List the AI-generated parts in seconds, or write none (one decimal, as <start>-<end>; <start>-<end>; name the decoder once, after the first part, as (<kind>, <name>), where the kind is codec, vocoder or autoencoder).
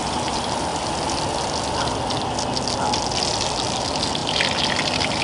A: none